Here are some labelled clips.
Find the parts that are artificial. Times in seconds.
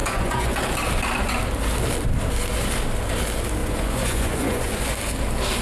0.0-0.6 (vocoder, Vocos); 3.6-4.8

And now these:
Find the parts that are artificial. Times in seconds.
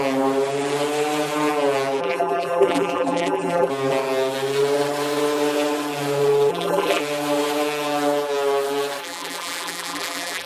2.0-3.7 (vocoder, BigVGAN v2); 6.5-7.0; 9.0-10.5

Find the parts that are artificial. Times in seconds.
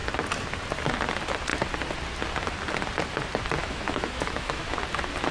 3.6-4.6 (autoencoder, DAC-VAE)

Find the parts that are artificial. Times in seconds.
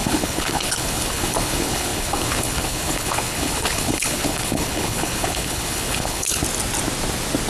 0.0-6.4 (codec, HILCodec)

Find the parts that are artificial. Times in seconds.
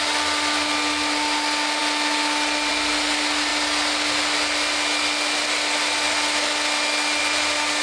none